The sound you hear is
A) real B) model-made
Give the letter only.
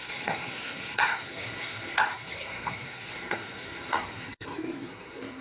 B